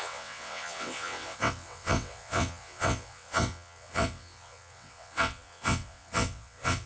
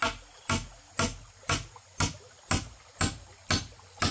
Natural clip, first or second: second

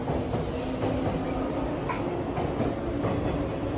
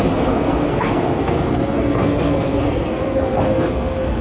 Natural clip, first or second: first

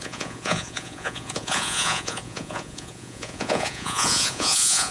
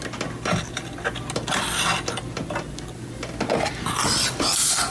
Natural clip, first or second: second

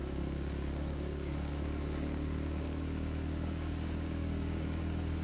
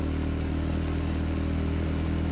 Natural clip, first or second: second